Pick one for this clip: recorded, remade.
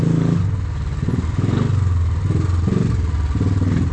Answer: recorded